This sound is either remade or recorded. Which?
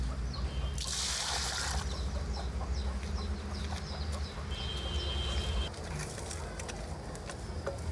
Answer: recorded